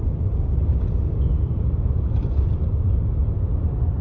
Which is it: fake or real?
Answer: real